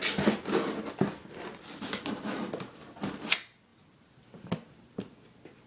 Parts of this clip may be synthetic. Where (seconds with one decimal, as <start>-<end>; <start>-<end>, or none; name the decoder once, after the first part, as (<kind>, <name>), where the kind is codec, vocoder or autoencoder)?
none